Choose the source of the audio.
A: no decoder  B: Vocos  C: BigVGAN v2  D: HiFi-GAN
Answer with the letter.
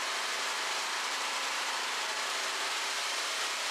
C